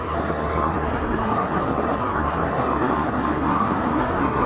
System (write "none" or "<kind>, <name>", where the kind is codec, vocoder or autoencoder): codec, SNAC